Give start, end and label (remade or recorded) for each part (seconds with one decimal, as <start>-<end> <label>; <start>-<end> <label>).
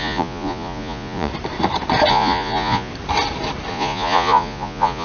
0.0-1.3 remade; 1.3-2.1 recorded; 2.1-2.9 remade; 2.9-3.7 recorded; 3.7-5.0 remade